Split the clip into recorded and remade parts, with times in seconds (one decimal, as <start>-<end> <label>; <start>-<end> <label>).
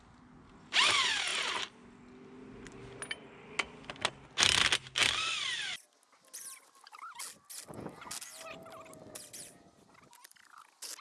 0.0-11.0 recorded